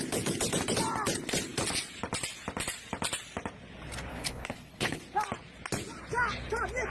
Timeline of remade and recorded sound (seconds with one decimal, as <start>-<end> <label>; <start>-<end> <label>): 0.0-4.1 recorded; 4.1-5.0 remade; 5.0-6.9 recorded